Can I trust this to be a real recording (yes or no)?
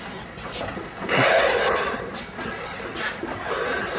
yes